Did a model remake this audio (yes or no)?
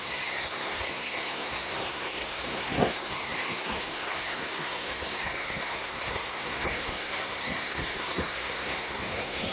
yes